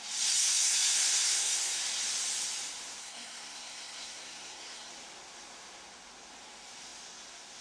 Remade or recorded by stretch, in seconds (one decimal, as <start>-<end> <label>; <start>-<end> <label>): 0.0-0.4 recorded; 0.4-1.8 remade; 1.8-3.0 recorded; 3.0-4.9 remade; 4.9-7.6 recorded